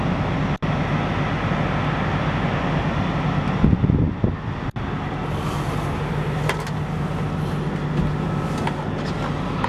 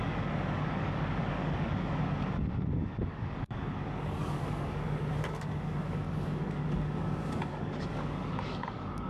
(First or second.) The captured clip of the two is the first